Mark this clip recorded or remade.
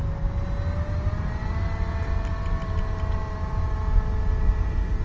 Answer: recorded